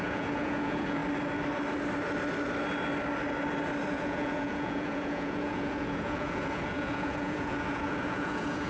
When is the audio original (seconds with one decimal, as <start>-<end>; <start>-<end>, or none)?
1.0-3.9